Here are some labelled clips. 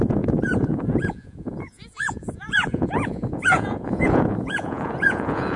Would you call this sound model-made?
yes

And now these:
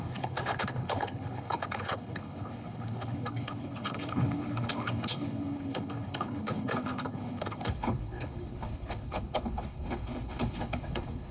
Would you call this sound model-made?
yes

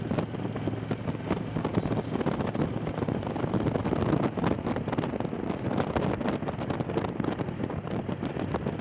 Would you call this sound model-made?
no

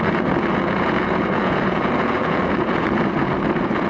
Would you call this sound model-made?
yes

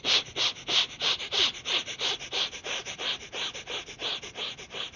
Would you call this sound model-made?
no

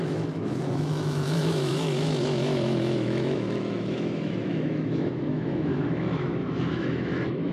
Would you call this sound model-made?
yes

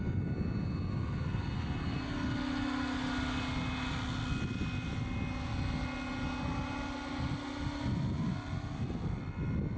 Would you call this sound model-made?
no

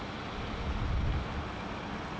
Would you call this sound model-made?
no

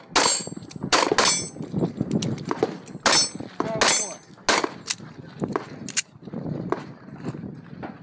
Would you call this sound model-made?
no